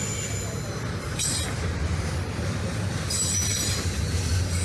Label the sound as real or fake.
real